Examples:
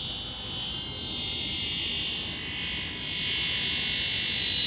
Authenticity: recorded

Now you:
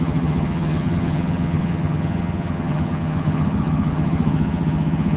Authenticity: remade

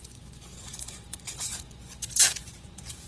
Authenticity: remade